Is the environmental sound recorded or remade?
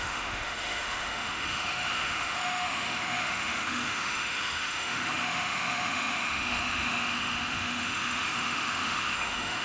remade